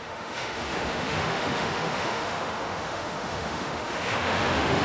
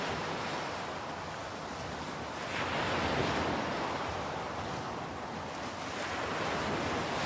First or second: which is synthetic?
first